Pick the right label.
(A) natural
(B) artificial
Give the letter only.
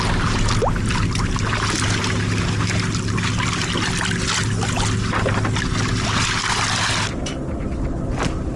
A